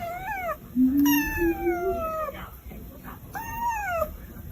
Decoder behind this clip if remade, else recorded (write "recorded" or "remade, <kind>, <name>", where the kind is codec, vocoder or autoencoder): recorded